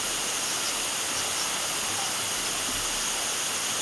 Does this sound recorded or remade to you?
recorded